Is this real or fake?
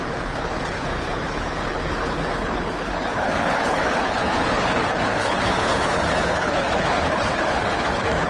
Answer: fake